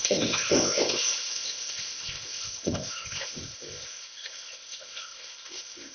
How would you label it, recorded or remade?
remade